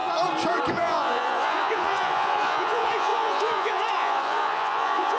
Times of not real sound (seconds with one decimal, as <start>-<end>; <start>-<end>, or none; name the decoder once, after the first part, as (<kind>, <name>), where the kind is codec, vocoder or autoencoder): 0.7-5.2 (vocoder, Vocos)